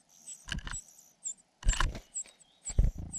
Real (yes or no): yes